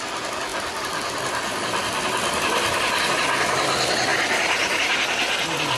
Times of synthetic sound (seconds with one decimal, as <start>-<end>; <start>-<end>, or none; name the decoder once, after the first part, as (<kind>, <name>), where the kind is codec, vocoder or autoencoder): none